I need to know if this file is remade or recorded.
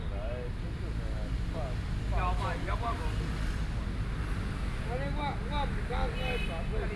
recorded